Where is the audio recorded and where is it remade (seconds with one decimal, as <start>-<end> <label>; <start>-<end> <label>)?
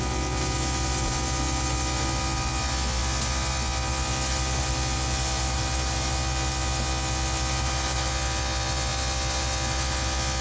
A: 0.0-10.4 recorded